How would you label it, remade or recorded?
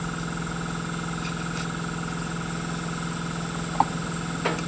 recorded